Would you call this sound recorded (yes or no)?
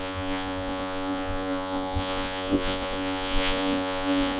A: no